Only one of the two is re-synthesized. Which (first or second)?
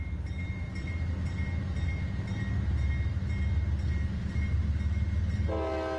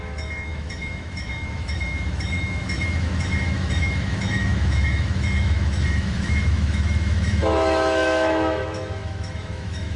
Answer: second